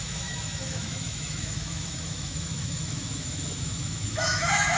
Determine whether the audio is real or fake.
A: fake